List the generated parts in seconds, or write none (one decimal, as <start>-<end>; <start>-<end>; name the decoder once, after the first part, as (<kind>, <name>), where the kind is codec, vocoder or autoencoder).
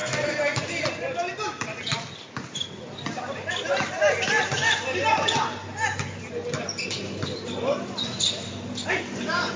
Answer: none